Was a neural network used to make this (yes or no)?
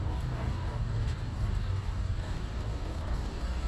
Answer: yes